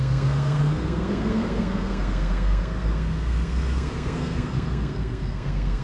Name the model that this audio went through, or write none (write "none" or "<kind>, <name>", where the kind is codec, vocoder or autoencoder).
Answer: codec, SNAC